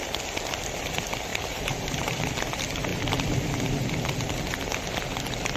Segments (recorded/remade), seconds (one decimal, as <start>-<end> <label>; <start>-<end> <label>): 0.0-1.3 recorded; 1.3-2.2 remade; 2.2-5.6 recorded